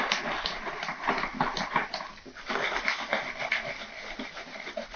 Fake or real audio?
real